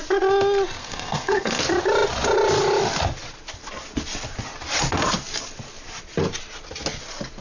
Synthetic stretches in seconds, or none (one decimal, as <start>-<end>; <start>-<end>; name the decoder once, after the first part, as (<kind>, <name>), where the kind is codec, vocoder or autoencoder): 0.8-1.6 (codec, SNAC)